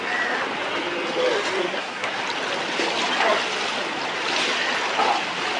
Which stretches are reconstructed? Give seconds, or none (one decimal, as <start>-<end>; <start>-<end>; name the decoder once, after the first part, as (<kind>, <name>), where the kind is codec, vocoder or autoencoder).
1.6-2.2 (codec, SNAC)